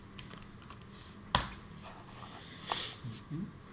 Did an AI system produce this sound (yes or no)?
no